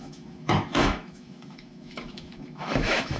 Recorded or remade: remade